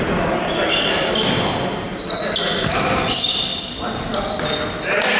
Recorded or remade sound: recorded